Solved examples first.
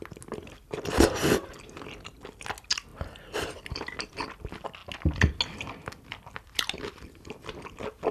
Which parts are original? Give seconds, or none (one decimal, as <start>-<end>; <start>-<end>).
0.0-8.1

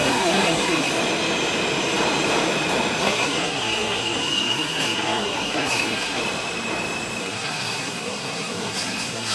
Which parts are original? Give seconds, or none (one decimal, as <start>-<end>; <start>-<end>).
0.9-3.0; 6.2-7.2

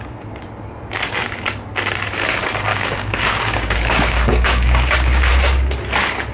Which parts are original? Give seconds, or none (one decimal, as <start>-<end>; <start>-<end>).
0.0-2.7; 5.3-6.3

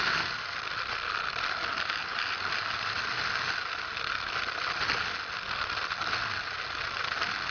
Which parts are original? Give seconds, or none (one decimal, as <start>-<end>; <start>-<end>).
0.0-2.1; 3.5-7.5

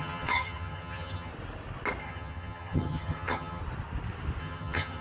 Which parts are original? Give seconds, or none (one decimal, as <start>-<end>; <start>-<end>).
1.3-2.0; 3.6-4.4

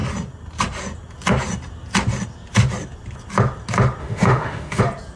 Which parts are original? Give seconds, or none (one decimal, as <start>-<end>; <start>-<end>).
0.0-4.0; 4.8-5.2